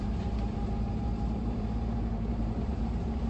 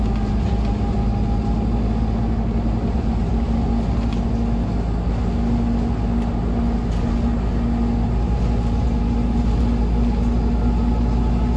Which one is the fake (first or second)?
first